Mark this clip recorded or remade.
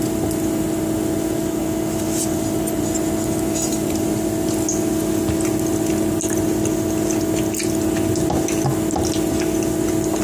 recorded